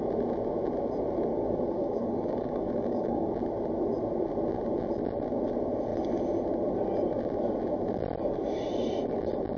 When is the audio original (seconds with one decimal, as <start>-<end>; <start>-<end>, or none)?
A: 0.0-1.3; 3.3-9.6